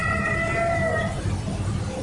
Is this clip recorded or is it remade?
recorded